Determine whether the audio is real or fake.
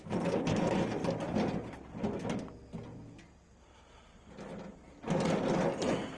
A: real